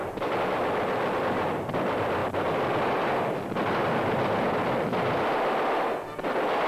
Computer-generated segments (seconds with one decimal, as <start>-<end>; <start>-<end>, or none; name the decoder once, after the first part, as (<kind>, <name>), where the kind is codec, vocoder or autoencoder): none